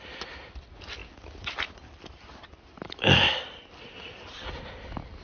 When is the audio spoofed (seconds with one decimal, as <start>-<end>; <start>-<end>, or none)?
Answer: none